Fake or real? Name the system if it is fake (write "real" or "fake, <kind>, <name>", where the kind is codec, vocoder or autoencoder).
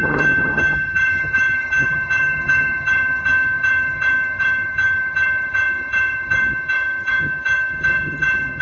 fake, vocoder, HiFi-GAN